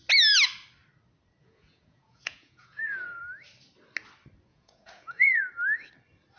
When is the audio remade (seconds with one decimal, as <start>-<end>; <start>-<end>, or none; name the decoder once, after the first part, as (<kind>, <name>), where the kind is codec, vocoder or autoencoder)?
1.4-3.2 (vocoder, Vocos); 4.5-5.4